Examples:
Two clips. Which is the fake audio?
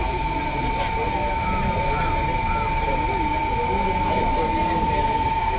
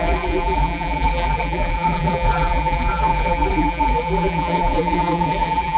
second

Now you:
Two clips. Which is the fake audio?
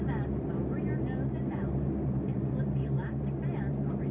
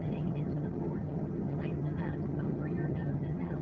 second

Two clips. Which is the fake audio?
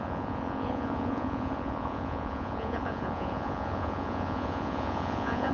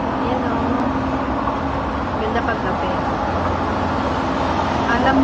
first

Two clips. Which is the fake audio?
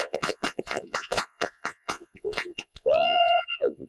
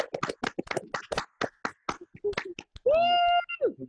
first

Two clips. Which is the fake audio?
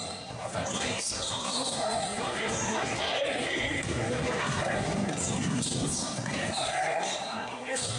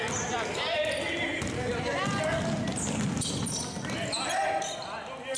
first